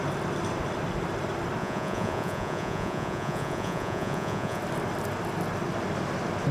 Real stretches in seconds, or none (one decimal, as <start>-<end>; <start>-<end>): 0.0-1.6; 4.6-6.5